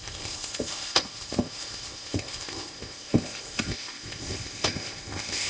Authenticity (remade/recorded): remade